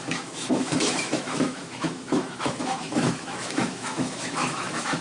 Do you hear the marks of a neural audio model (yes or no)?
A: yes